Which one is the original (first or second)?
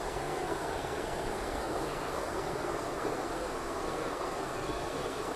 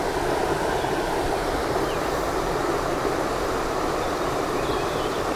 second